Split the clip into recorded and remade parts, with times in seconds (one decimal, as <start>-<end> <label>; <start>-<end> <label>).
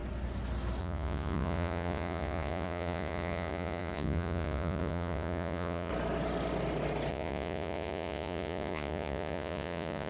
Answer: 0.0-0.8 recorded; 0.8-5.9 remade; 5.9-7.1 recorded; 7.1-10.1 remade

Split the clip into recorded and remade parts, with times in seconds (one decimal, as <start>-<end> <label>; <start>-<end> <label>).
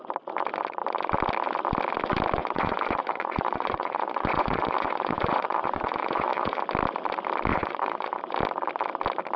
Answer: 0.0-2.4 recorded; 2.4-6.6 remade; 6.6-7.5 recorded; 7.5-8.2 remade; 8.2-9.4 recorded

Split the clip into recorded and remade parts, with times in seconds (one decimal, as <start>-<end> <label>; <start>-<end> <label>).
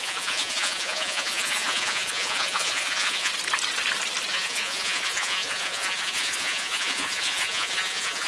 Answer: 0.0-3.3 remade; 3.3-4.3 recorded; 4.3-8.3 remade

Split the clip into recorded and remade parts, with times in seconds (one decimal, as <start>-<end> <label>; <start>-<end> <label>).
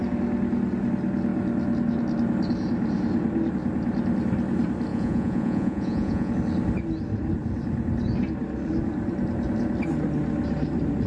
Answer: 0.0-4.9 recorded; 4.9-6.3 remade; 6.3-11.1 recorded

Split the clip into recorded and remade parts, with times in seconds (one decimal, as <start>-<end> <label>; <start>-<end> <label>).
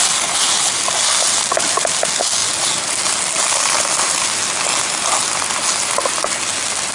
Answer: 0.0-6.9 recorded